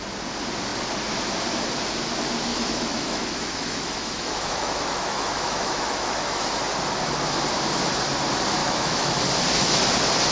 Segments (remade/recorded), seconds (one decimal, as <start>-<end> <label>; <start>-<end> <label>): 0.0-2.5 recorded; 2.5-6.5 remade; 6.5-8.6 recorded; 8.6-9.2 remade; 9.2-10.3 recorded

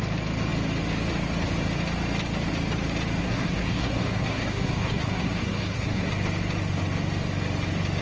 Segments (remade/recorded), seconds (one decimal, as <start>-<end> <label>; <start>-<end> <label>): 0.0-3.2 recorded; 3.2-6.1 remade; 6.1-8.0 recorded

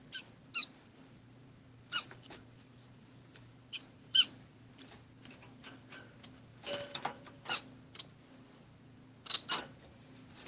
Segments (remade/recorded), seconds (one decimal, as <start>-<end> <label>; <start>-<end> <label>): 0.0-0.6 recorded; 0.6-4.7 remade; 4.7-10.5 recorded